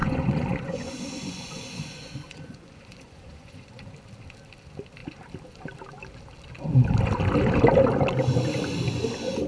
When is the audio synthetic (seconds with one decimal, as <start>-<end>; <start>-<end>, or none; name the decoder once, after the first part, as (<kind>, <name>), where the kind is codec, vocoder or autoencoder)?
0.0-3.8 (vocoder, Vocos)